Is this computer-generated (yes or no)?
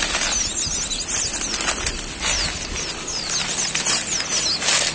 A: no